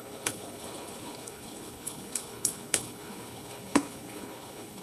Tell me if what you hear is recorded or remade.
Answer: remade